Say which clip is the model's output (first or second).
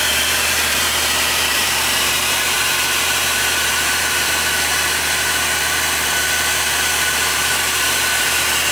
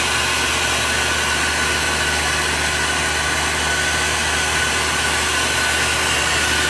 first